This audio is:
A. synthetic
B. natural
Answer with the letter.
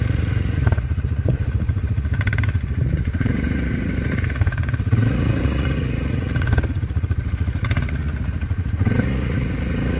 A